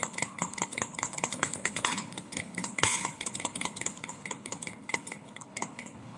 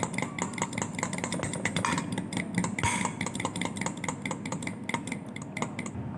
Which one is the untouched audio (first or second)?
second